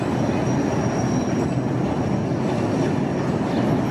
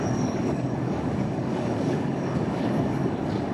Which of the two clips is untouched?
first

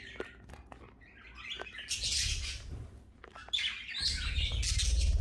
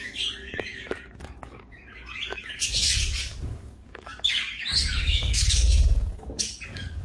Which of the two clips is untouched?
first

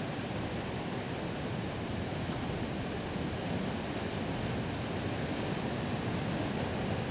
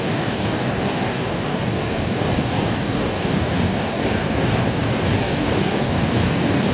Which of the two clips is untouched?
first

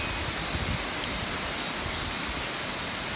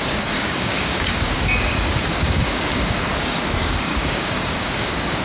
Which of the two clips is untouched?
first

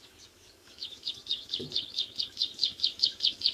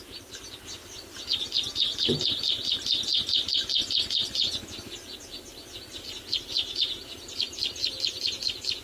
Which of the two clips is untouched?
second